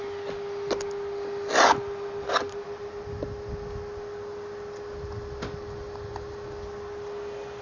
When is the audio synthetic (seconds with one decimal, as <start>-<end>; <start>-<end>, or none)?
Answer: none